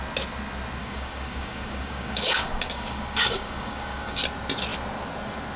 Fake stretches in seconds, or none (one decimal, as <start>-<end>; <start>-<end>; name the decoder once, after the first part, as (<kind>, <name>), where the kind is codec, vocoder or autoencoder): 0.8-4.2 (codec, DAC)